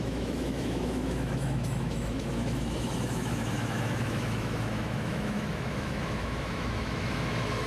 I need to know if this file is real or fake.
fake